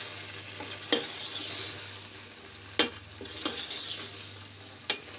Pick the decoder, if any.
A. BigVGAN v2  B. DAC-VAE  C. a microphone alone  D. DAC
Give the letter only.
C